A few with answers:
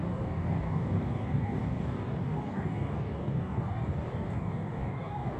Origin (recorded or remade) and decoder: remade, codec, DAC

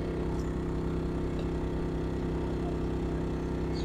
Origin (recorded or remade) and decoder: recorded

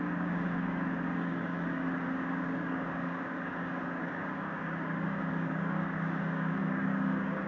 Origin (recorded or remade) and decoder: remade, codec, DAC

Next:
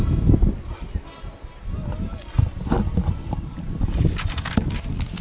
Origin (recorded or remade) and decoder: recorded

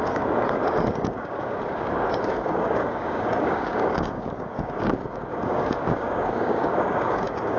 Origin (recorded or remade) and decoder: remade, codec, DAC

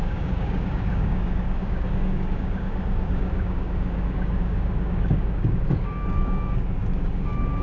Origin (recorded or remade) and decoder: remade, codec, DAC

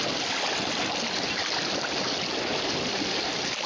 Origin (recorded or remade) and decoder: recorded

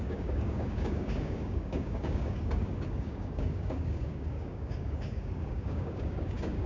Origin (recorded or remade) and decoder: remade, codec, DAC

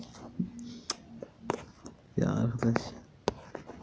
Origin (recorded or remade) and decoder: recorded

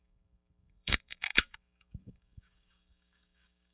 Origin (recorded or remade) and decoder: remade, codec, DAC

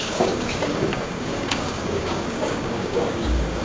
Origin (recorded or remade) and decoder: remade, codec, DAC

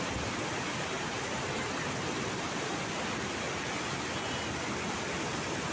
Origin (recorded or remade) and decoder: recorded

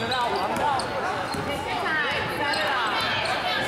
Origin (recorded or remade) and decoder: recorded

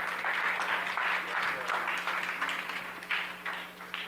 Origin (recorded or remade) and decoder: recorded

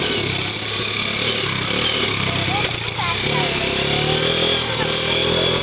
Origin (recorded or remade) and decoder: recorded